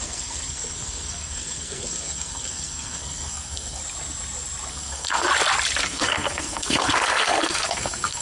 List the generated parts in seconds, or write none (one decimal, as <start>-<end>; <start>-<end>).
0.0-3.8; 4.7-5.3; 5.8-8.2